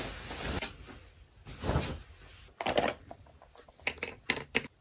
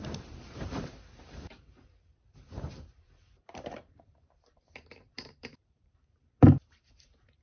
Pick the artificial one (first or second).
second